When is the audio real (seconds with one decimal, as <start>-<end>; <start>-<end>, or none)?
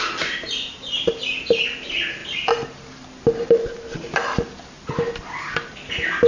0.0-6.3